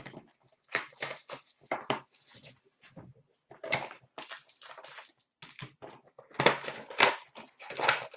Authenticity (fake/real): real